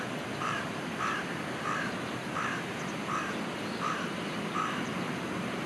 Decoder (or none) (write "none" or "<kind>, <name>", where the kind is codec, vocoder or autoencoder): none